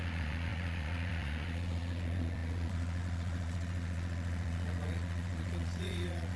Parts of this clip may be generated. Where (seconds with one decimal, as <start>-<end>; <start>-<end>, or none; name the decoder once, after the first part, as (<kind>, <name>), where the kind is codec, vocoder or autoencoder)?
0.0-6.4 (vocoder, Vocos)